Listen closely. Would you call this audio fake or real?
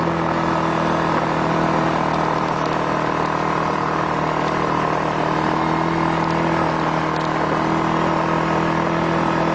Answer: real